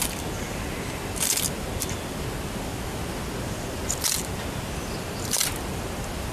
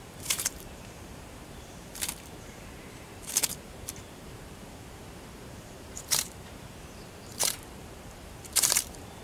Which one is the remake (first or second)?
second